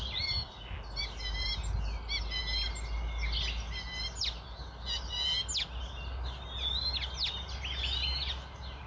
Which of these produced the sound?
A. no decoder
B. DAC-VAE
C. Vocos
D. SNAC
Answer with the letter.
A